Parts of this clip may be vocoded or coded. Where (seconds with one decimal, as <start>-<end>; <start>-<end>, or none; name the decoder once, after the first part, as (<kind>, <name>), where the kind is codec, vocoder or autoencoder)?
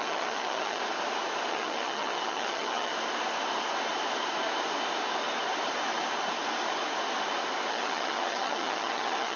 0.0-0.8 (vocoder, HiFi-GAN); 1.5-2.9; 7.7-9.4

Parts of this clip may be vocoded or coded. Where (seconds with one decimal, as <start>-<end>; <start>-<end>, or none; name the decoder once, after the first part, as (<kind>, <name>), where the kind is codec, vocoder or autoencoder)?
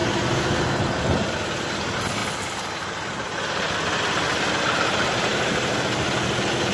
none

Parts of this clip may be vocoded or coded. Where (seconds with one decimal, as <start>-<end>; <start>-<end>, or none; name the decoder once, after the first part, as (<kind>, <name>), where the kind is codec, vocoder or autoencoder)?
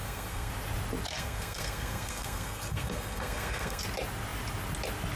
0.0-0.5 (codec, SNAC); 1.1-3.8